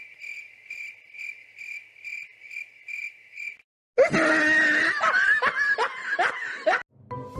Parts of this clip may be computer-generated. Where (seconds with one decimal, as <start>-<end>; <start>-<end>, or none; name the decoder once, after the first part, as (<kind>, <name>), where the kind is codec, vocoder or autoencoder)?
none